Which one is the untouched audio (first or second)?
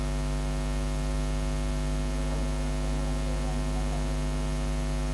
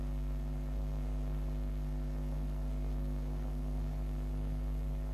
first